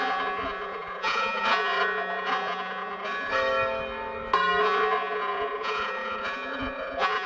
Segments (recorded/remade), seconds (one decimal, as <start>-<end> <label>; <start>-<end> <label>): 0.0-3.3 remade; 3.3-4.6 recorded; 4.6-7.3 remade